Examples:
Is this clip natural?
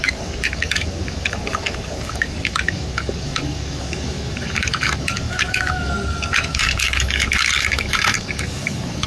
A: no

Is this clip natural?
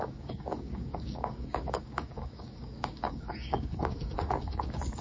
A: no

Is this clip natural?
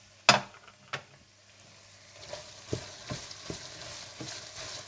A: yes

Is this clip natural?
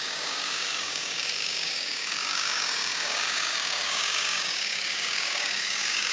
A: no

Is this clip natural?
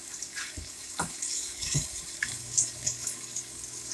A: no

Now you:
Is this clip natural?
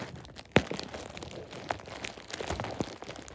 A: yes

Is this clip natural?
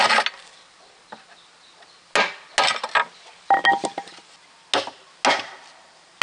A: yes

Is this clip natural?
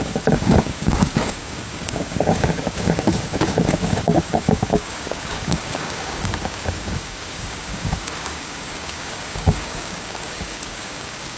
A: no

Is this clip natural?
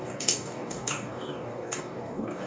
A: no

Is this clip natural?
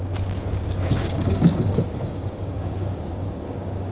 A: no